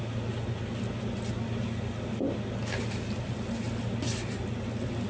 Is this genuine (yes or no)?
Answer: yes